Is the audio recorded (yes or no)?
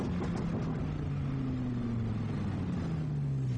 yes